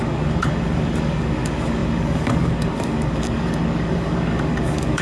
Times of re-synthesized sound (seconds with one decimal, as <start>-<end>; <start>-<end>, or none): 0.0-5.0